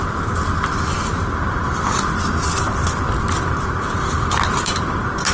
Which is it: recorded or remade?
recorded